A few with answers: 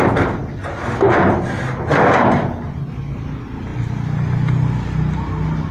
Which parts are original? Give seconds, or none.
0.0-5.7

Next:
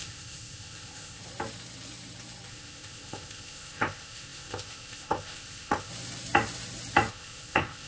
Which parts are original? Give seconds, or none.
1.2-2.5; 5.9-7.1

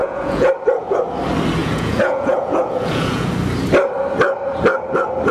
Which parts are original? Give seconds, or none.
0.5-1.6; 3.3-5.3

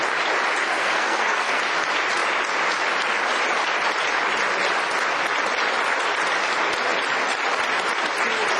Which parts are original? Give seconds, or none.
0.0-0.6; 1.6-8.6

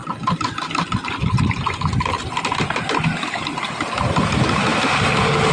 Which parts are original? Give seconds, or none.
0.0-5.5